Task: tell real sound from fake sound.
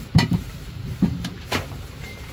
fake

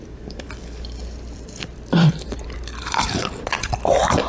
fake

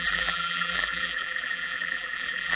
fake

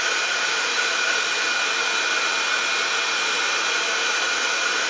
real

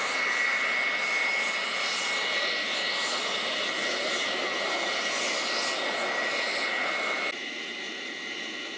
real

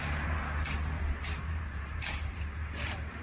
fake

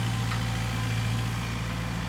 real